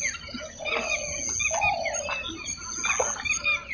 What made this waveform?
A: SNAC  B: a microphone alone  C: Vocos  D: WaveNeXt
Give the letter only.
B